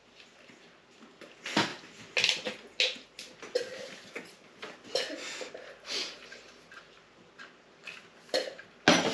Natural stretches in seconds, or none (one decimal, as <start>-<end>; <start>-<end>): 0.0-9.1